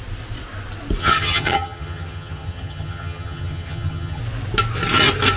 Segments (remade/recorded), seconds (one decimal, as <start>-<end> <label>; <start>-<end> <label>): 0.0-1.0 recorded; 1.0-4.2 remade; 4.2-5.4 recorded

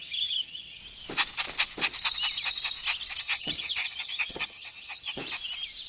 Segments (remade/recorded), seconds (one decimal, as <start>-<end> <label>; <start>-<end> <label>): 0.0-0.8 remade; 0.8-3.2 recorded; 3.2-5.2 remade; 5.2-5.9 recorded